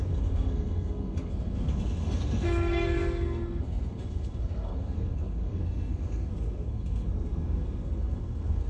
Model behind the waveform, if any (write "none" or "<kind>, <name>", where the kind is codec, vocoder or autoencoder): codec, SNAC